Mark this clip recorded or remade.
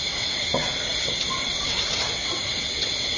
remade